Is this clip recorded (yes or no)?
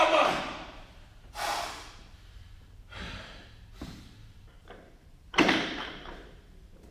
no